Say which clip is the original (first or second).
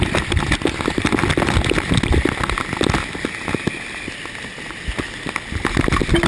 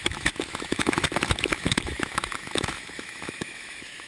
first